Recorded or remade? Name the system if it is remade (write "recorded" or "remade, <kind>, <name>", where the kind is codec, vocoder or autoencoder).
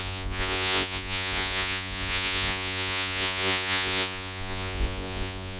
remade, vocoder, Vocos